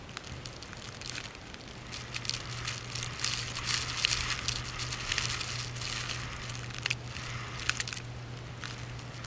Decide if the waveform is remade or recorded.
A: recorded